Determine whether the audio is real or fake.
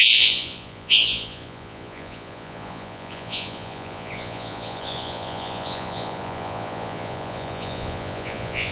fake